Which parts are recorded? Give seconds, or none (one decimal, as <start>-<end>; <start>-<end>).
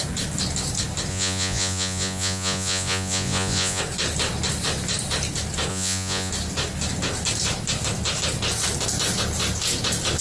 0.0-1.1; 3.8-5.7; 6.3-10.2